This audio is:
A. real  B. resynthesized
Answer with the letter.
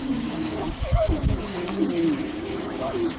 B